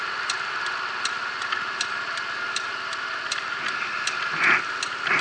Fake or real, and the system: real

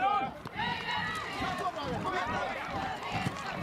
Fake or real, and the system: fake, vocoder, BigVGAN v2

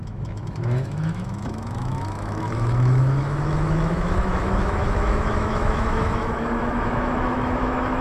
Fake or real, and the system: fake, autoencoder, DAC-VAE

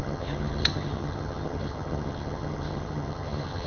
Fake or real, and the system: fake, vocoder, HiFi-GAN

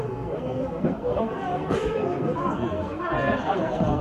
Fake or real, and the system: fake, codec, SNAC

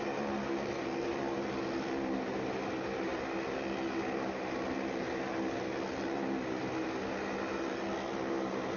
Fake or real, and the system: real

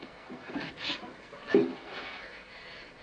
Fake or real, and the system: fake, codec, SNAC